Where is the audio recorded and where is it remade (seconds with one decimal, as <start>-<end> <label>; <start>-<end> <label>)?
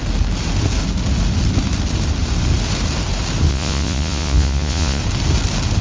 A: 0.0-3.5 recorded; 3.5-5.0 remade; 5.0-5.8 recorded